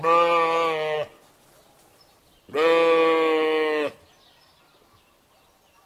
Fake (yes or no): no